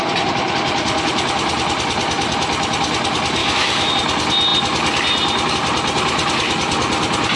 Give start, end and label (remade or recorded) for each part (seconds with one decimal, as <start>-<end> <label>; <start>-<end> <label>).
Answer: 0.0-3.4 recorded; 3.4-3.9 remade; 3.9-7.4 recorded